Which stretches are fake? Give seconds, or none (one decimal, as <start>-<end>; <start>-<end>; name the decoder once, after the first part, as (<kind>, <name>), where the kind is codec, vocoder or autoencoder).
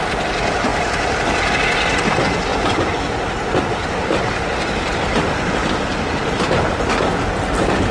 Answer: 0.7-1.5 (vocoder, BigVGAN v2); 2.5-6.9